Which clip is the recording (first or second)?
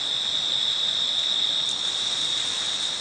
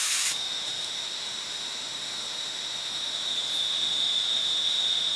first